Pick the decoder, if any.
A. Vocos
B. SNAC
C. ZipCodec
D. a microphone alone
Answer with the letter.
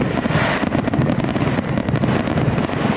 D